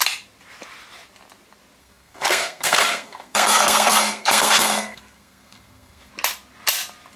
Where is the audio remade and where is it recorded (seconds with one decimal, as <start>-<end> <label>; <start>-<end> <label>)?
0.0-1.8 recorded; 1.8-6.1 remade; 6.1-7.2 recorded